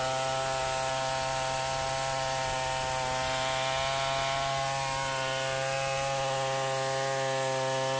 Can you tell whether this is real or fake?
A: real